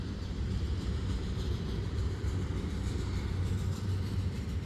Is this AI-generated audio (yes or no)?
yes